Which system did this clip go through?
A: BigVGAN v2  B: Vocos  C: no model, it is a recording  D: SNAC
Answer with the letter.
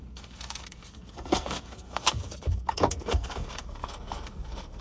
D